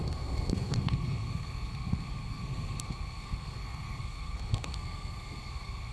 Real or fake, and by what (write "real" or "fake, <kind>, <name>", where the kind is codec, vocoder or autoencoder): fake, codec, SNAC